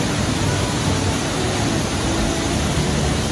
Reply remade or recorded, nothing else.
recorded